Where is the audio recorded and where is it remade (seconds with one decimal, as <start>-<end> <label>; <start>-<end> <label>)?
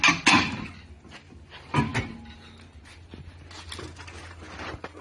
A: 0.0-5.0 recorded